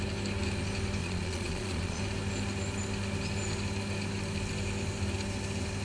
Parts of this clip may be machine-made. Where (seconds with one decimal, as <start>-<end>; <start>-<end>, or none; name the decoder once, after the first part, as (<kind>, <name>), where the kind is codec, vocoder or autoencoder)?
1.0-2.0 (vocoder, Vocos)